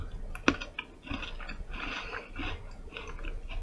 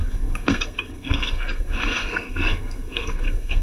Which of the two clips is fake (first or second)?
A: second